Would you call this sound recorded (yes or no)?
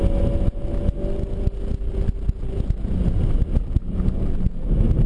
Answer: yes